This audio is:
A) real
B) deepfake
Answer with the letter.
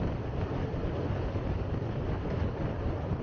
A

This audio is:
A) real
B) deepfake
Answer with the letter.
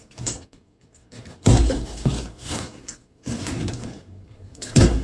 B